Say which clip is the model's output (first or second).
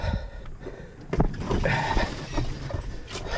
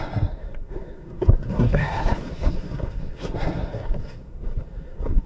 second